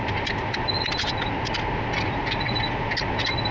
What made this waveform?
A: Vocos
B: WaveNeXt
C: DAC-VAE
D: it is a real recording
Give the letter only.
D